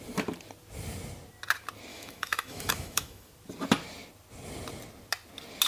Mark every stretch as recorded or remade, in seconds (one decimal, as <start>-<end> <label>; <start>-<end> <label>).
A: 0.0-1.9 recorded; 1.9-3.3 remade; 3.3-5.7 recorded